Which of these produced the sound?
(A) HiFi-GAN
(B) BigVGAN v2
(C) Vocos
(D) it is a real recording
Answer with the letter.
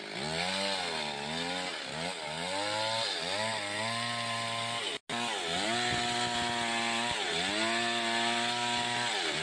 D